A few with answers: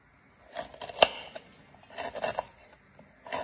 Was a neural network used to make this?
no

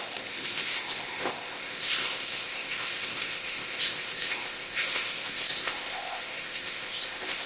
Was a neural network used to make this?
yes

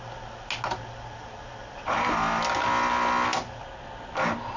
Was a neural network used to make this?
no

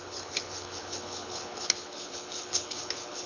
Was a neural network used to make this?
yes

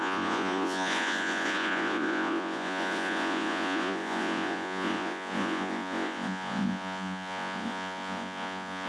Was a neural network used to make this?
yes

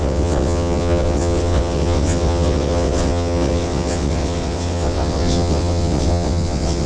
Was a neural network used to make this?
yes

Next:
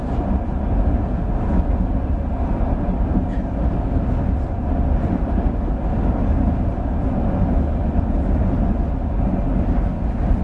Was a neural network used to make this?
no